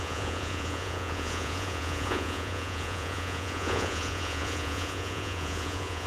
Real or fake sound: fake